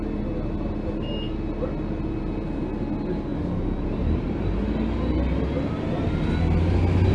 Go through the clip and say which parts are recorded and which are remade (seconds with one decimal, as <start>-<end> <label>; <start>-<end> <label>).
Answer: 0.0-7.1 recorded